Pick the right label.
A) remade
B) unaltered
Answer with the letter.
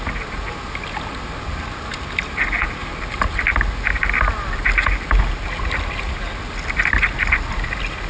B